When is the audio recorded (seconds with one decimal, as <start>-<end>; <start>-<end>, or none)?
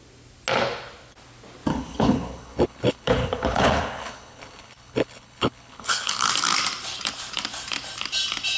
0.0-1.7; 6.3-8.6